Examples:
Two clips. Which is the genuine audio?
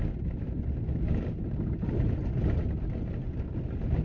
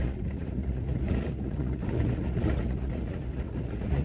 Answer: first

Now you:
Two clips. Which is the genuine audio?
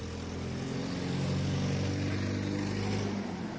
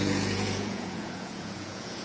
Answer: first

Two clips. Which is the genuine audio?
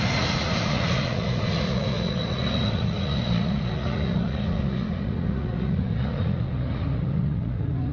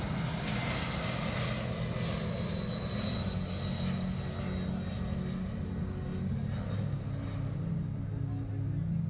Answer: second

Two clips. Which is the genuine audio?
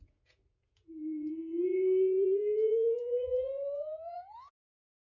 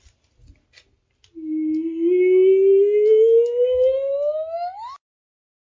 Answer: second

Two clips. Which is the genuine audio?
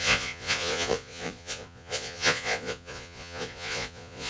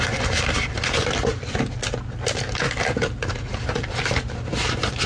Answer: second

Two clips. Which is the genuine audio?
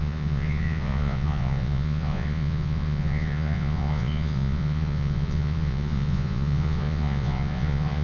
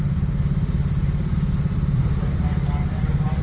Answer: second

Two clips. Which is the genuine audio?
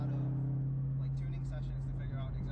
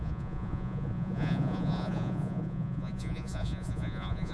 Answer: first